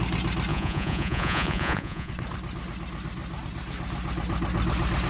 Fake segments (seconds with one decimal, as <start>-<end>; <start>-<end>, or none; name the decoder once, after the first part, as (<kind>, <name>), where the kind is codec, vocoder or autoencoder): 0.5-2.1 (vocoder, Vocos)